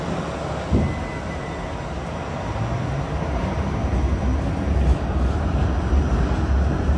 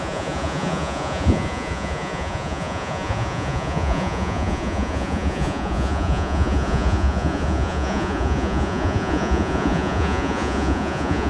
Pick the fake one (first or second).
second